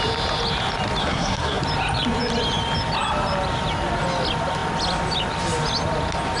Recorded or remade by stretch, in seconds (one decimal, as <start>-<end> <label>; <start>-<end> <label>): 0.0-1.0 recorded; 1.0-1.6 remade; 1.6-6.4 recorded